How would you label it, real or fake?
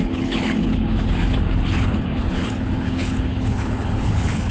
fake